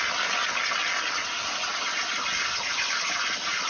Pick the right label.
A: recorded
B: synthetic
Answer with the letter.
A